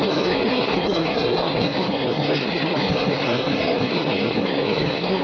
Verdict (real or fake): fake